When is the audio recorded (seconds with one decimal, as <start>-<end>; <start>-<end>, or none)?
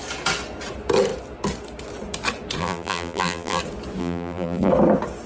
0.0-2.6; 3.6-4.0; 4.7-5.3